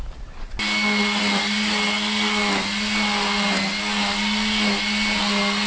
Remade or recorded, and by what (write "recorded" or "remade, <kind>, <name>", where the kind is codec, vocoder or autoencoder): recorded